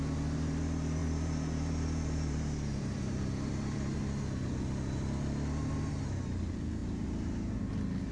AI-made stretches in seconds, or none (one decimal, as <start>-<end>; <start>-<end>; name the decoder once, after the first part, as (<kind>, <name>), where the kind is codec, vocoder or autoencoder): 1.0-4.0 (vocoder, BigVGAN v2); 6.8-7.5